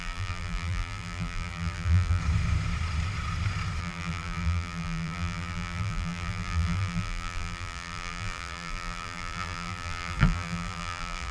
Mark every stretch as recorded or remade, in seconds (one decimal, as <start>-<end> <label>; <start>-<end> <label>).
0.0-2.2 remade; 2.2-3.8 recorded; 3.8-11.3 remade